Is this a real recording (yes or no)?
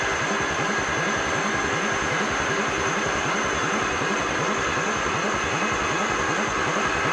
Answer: yes